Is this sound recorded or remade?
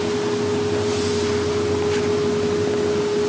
recorded